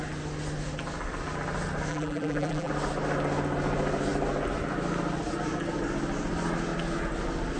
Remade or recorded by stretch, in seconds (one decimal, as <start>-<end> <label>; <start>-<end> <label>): 0.0-1.9 recorded; 1.9-2.7 remade; 2.7-7.6 recorded